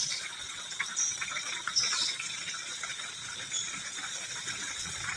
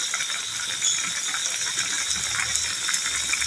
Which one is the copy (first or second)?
first